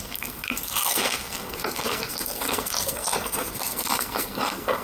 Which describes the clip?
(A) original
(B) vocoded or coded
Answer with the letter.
B